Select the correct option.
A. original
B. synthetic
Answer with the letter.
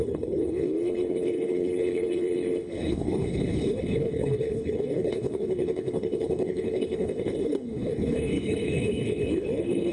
B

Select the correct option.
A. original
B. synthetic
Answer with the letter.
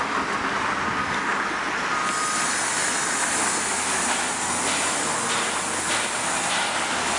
A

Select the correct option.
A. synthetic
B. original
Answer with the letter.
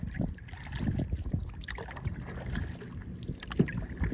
B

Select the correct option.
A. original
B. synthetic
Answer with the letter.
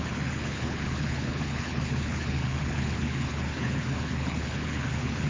B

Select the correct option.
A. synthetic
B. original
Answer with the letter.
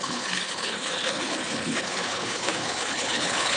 A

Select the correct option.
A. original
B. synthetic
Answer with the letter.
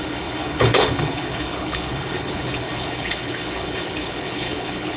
B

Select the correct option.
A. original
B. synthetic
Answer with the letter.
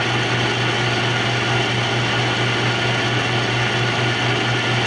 A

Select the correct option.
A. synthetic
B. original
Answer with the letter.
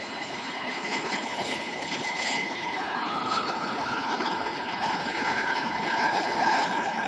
A